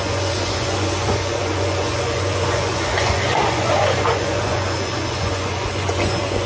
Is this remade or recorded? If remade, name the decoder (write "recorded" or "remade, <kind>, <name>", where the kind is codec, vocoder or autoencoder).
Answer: remade, vocoder, Vocos